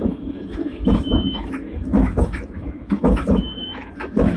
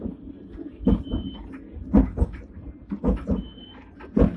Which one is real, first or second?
second